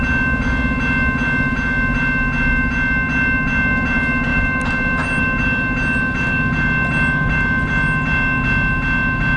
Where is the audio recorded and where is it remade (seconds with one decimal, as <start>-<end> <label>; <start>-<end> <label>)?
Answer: 0.0-9.4 recorded